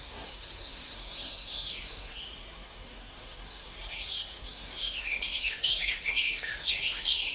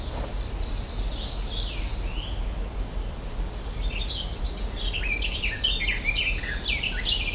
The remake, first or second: first